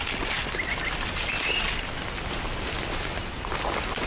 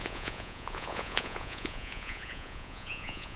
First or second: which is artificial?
second